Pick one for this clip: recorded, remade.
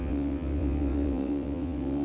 remade